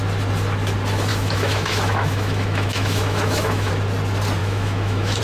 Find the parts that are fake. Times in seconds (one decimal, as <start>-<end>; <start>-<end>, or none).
1.1-3.7; 4.4-5.2